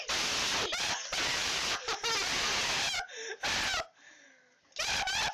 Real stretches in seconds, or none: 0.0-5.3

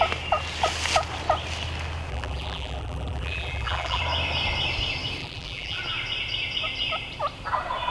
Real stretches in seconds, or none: 0.0-2.1; 4.0-5.2; 5.8-7.9